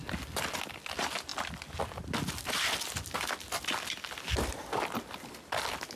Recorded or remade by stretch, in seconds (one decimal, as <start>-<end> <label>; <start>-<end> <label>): 0.0-6.0 recorded